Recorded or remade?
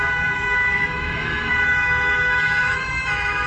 remade